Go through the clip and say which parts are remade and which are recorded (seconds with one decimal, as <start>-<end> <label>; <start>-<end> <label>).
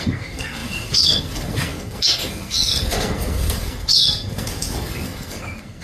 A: 0.0-5.8 remade